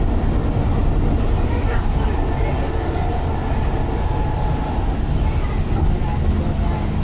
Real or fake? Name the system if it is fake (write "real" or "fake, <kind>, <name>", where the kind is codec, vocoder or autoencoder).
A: real